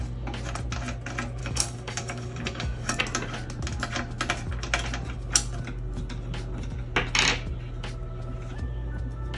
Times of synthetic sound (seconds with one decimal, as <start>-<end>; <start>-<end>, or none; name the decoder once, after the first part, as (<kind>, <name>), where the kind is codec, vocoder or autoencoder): 1.4-3.0 (codec, DAC)